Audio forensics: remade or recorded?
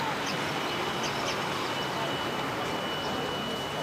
recorded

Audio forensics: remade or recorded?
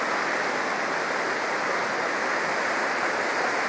recorded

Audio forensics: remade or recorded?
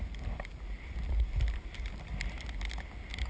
recorded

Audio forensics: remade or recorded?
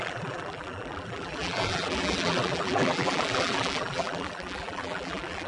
remade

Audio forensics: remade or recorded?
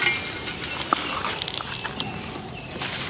recorded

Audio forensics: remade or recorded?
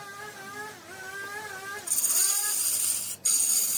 recorded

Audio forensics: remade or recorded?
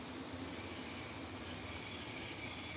recorded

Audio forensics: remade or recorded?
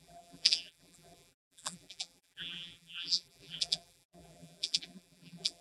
remade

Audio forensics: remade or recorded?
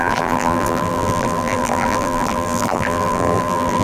remade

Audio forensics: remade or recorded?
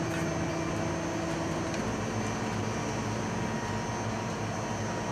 recorded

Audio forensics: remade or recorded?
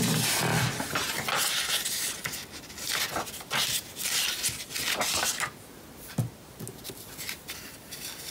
recorded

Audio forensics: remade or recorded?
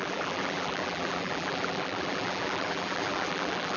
remade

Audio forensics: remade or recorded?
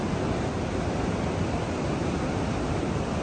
recorded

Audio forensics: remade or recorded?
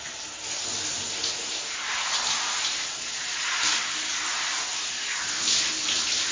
recorded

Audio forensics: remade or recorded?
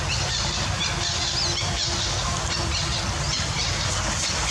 remade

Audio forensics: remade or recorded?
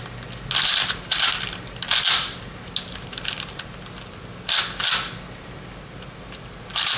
recorded